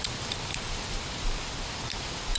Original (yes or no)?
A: no